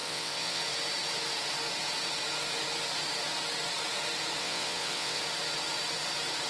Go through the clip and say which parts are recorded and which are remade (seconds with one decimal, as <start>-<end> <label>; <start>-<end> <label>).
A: 0.0-0.6 remade; 0.6-4.4 recorded; 4.4-5.2 remade; 5.2-6.5 recorded